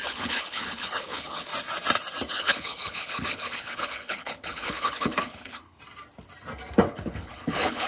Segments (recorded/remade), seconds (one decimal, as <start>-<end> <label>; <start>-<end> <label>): 0.0-1.5 remade; 1.5-2.3 recorded; 2.3-5.8 remade; 5.8-6.9 recorded; 6.9-7.9 remade